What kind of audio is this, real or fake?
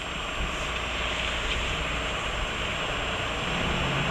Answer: real